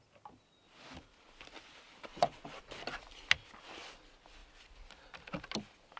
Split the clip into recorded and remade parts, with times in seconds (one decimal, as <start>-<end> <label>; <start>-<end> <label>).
0.0-2.1 recorded; 2.1-2.6 remade; 2.6-6.0 recorded